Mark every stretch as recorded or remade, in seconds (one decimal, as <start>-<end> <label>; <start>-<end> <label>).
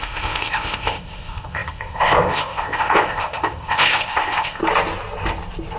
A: 0.0-4.6 remade; 4.6-5.8 recorded